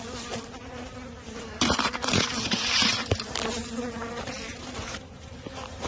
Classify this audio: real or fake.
real